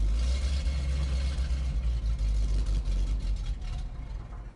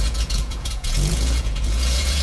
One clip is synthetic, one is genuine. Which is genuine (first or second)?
first